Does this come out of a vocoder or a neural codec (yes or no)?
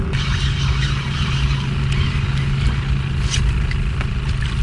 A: no